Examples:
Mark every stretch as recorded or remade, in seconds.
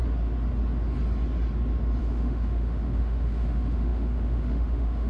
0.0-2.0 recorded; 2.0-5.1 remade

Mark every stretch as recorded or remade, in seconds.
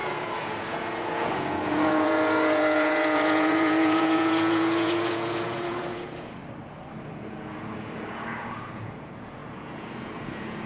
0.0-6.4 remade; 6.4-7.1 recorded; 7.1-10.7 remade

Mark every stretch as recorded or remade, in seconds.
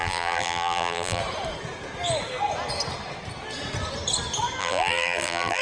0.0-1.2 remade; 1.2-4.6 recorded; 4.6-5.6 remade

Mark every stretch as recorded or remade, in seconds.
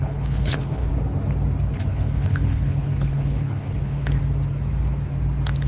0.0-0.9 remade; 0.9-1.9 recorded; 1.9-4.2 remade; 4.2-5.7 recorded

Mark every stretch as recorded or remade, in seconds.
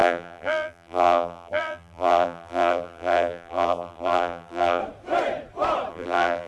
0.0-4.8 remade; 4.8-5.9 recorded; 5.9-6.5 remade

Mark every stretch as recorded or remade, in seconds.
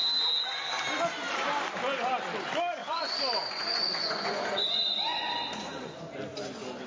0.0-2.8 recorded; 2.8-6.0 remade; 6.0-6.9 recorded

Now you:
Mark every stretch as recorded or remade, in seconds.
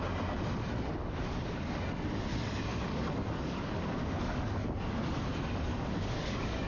0.0-1.0 recorded; 1.0-1.8 remade; 1.8-2.7 recorded; 2.7-4.5 remade; 4.5-5.7 recorded; 5.7-6.7 remade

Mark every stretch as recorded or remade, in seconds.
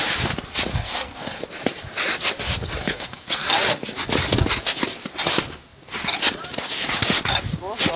0.0-0.7 recorded; 0.7-1.4 remade; 1.4-2.8 recorded; 2.8-3.5 remade; 3.5-8.0 recorded